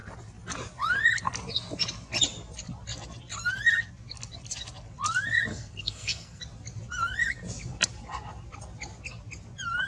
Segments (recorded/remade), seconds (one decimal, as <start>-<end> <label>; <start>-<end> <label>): 0.0-5.5 recorded; 5.5-6.4 remade; 6.4-9.9 recorded